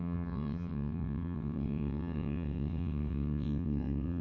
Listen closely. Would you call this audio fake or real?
fake